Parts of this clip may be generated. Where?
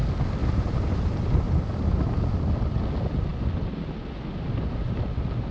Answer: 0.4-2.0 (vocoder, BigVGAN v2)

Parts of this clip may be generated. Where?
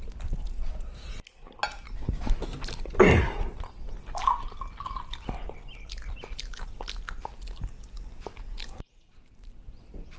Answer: none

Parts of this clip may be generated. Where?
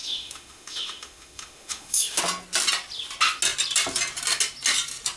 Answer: 0.0-2.2 (autoencoder, DAC-VAE)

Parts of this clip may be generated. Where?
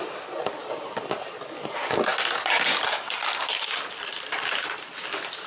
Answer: none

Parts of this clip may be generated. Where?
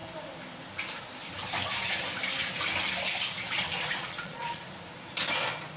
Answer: 4.0-4.6 (vocoder, Vocos)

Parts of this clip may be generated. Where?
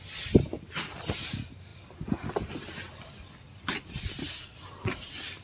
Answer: none